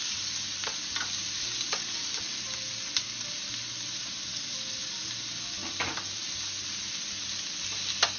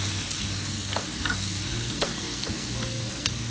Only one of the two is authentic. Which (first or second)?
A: first